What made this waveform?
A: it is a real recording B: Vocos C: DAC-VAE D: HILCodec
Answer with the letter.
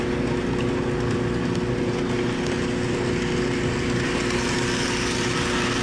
A